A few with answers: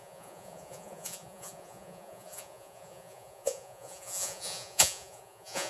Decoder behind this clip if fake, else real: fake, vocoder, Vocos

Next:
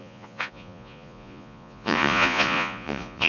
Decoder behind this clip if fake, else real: fake, vocoder, Vocos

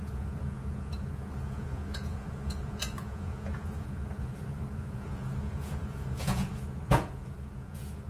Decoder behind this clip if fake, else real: fake, vocoder, Vocos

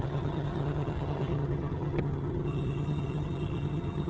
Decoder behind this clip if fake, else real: fake, vocoder, HiFi-GAN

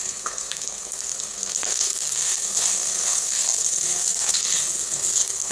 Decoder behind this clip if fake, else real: fake, codec, SNAC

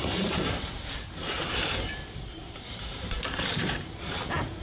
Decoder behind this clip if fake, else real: fake, vocoder, BigVGAN v2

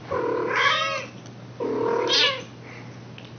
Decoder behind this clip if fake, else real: real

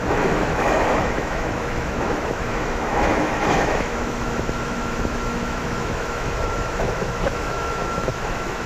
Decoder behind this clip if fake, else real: fake, autoencoder, DAC-VAE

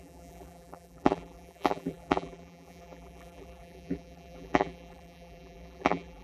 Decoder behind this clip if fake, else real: fake, vocoder, BigVGAN v2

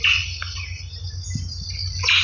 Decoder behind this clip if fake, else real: real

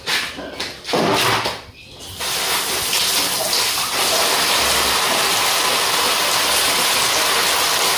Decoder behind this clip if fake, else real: real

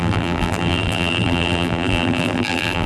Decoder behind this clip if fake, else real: fake, vocoder, BigVGAN v2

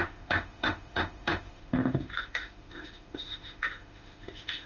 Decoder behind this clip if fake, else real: fake, autoencoder, DAC-VAE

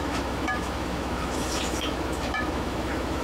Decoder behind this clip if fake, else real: fake, autoencoder, DAC-VAE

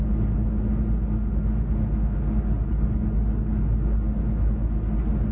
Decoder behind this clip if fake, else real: real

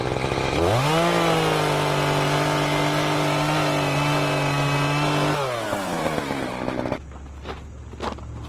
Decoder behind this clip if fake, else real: real